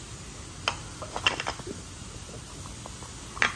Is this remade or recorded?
recorded